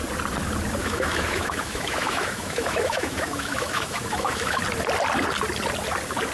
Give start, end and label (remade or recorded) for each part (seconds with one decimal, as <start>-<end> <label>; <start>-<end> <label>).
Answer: 0.0-0.8 recorded; 0.8-4.6 remade; 4.6-6.3 recorded